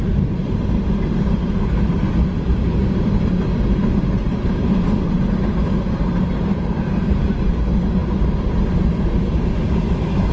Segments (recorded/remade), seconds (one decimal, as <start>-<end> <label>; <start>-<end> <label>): 0.0-0.4 recorded; 0.4-1.5 remade; 1.5-2.3 recorded; 2.3-7.5 remade; 7.5-8.9 recorded; 8.9-10.3 remade